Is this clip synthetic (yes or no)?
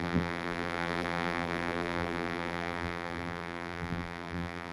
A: yes